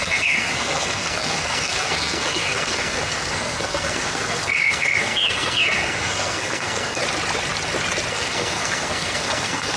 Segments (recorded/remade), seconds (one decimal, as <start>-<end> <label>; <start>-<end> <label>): 0.0-7.0 remade; 7.0-8.1 recorded; 8.1-9.8 remade